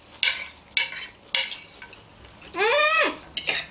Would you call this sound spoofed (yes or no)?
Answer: no